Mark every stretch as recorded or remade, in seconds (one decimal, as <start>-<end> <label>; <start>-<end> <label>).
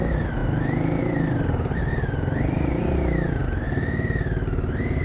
0.0-5.0 recorded